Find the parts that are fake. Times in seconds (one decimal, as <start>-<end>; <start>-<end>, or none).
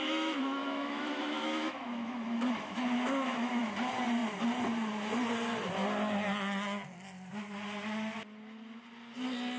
0.0-3.6